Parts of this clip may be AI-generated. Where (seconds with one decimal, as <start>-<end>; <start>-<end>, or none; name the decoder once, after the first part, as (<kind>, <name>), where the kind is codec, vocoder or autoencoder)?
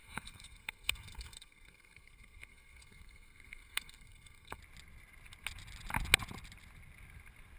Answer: 0.0-4.6 (codec, SNAC)